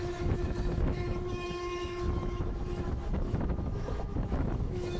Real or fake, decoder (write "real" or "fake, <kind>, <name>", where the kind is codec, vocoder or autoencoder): fake, autoencoder, DAC-VAE